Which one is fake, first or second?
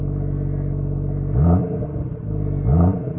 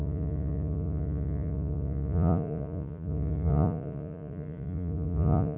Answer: second